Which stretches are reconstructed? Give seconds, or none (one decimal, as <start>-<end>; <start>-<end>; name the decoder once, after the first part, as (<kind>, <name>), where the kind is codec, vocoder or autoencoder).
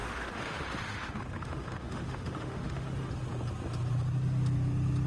0.0-3.1 (autoencoder, DAC-VAE)